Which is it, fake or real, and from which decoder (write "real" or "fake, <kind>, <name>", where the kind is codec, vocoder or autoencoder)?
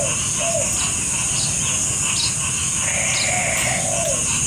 real